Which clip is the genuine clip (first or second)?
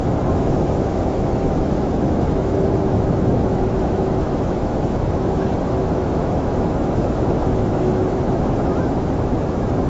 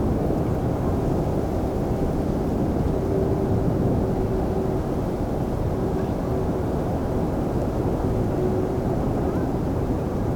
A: second